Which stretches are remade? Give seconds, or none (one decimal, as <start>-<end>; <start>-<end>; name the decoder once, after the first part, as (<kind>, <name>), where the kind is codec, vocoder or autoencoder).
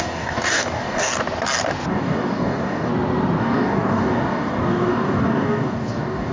0.0-1.1 (codec, DAC); 1.9-2.9; 3.4-6.3